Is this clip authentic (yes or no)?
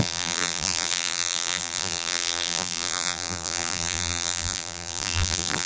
no